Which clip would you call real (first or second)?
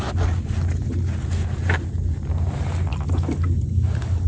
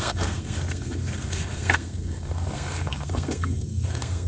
first